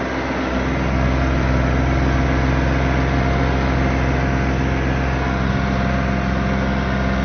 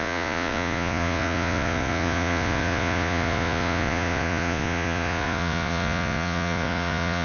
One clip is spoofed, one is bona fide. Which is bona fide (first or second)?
first